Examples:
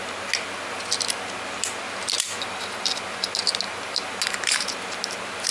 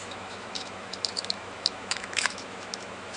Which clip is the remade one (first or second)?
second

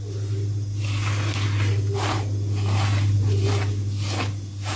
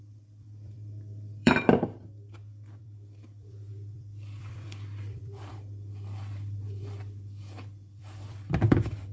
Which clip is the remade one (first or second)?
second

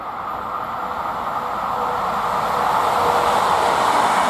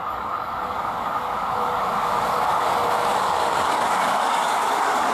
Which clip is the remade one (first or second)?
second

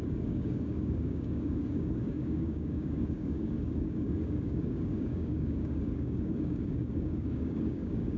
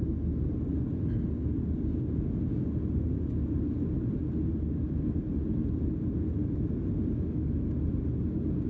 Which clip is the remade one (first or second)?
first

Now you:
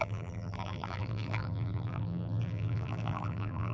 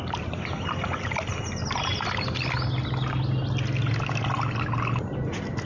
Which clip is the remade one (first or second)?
first